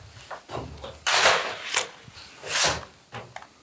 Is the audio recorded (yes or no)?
yes